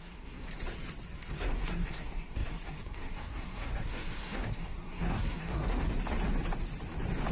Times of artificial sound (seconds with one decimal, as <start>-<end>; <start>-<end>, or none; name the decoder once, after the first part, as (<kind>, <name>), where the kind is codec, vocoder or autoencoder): 0.0-0.5 (codec, SNAC); 1.3-5.9